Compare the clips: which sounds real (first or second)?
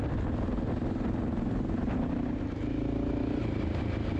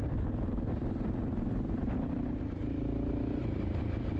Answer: first